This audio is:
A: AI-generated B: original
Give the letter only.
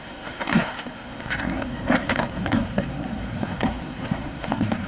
A